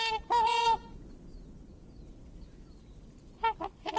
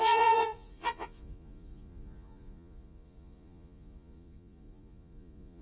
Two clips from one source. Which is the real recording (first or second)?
first